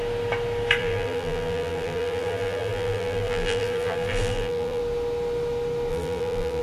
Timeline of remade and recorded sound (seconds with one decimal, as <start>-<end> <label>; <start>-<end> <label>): 0.0-0.8 recorded; 0.8-4.8 remade; 4.8-5.9 recorded; 5.9-6.6 remade